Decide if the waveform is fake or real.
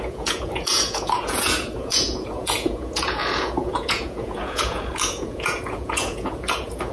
fake